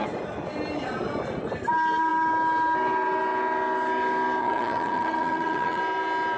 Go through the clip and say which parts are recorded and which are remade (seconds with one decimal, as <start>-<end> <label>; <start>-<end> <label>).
0.0-4.4 recorded; 4.4-5.8 remade; 5.8-6.4 recorded